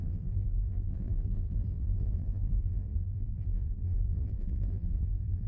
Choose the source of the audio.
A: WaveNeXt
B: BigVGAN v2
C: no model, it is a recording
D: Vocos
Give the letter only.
B